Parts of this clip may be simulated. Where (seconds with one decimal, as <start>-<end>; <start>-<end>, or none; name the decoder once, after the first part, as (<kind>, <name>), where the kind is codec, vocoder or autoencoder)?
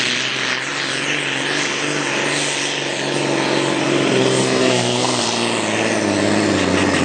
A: 4.4-5.2 (codec, SNAC)